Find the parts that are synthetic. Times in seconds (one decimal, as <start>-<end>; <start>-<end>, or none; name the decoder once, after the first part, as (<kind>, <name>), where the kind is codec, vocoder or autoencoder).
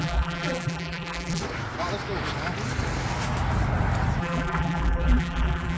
0.0-1.4 (vocoder, BigVGAN v2); 4.2-5.8